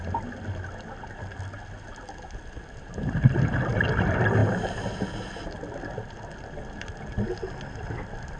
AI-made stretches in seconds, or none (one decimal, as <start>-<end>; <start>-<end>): none

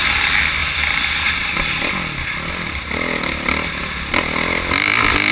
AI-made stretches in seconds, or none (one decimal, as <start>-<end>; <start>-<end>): none

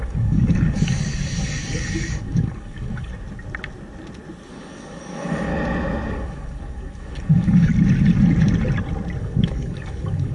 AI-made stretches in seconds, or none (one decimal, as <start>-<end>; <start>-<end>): 0.0-3.1; 4.5-5.5; 6.1-7.7; 9.2-10.3